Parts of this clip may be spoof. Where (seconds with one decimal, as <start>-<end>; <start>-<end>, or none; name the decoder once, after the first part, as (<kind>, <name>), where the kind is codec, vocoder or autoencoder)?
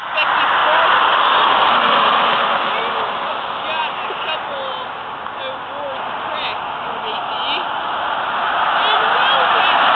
none